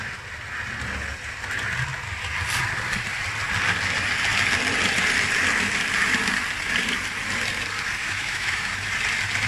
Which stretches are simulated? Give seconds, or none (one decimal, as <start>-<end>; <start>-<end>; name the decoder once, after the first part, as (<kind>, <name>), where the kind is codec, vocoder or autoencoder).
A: 8.0-8.7 (autoencoder, DAC-VAE)